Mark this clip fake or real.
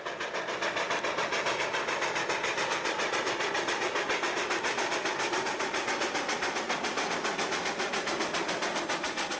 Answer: real